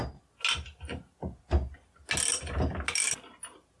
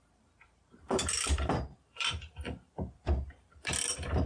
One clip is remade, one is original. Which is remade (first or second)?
second